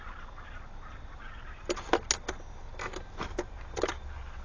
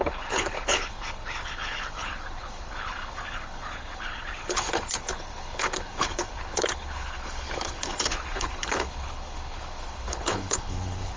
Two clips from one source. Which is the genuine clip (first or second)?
first